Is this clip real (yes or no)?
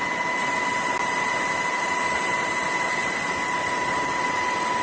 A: yes